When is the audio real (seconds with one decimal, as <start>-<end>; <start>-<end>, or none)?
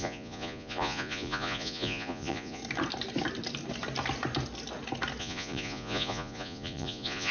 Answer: 2.6-5.2